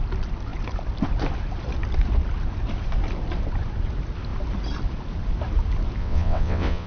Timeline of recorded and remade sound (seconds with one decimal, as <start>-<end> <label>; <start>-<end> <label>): 0.0-6.0 recorded; 6.0-6.9 remade